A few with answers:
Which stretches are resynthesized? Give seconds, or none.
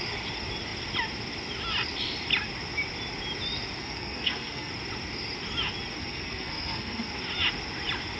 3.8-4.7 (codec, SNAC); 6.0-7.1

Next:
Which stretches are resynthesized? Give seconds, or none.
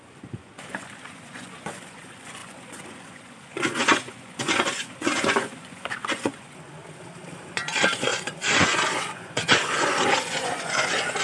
0.0-6.8 (vocoder, Vocos); 7.4-11.2